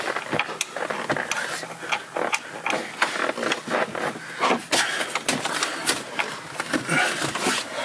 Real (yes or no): yes